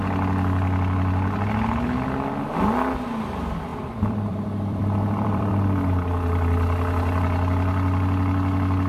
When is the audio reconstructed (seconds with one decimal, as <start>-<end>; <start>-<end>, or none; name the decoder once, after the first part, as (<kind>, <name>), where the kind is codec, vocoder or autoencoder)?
3.7-5.5 (vocoder, BigVGAN v2)